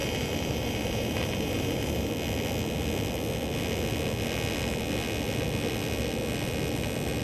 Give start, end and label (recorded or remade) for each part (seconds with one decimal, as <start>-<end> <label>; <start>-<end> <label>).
0.0-2.1 remade; 2.1-7.2 recorded